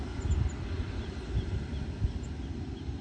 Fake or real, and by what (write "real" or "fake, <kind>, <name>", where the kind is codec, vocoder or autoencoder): real